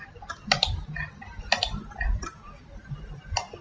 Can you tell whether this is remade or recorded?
remade